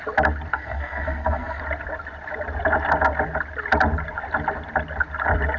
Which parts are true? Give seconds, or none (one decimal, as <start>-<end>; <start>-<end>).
0.0-0.5; 1.6-5.6